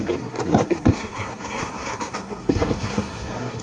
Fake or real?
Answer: fake